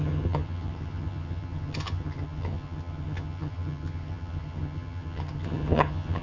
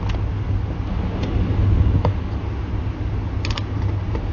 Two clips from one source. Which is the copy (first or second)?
first